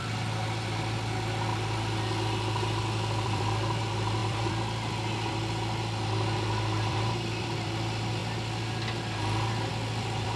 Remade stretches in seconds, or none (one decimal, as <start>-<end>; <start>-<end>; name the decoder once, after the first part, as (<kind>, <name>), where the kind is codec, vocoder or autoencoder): 0.0-8.2 (vocoder, BigVGAN v2); 9.7-10.4